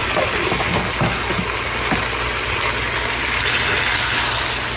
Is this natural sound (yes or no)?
yes